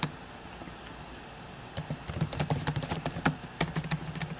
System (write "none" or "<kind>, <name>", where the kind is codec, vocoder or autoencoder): none